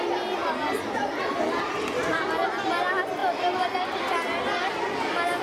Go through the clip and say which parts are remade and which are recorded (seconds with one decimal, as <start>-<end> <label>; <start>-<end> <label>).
0.0-5.4 recorded